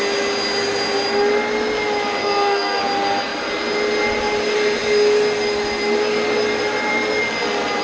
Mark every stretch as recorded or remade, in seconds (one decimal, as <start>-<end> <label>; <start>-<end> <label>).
0.0-2.2 recorded; 2.2-2.8 remade; 2.8-7.8 recorded